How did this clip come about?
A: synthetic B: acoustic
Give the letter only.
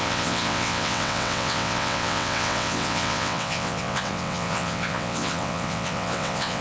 A